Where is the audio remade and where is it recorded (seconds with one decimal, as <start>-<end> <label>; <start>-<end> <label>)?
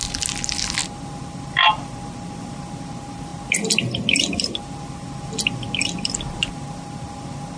0.0-7.6 recorded